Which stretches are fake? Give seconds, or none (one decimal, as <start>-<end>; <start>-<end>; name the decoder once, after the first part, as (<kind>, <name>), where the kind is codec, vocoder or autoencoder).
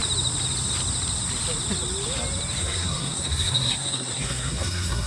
2.6-5.1 (codec, SNAC)